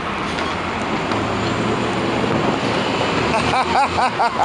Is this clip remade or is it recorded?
recorded